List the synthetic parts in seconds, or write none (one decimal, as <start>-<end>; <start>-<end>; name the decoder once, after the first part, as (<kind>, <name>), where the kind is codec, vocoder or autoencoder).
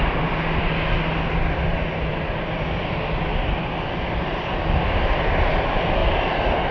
none